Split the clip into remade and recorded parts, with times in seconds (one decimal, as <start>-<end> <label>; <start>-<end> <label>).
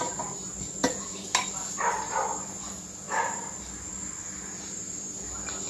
0.0-5.7 recorded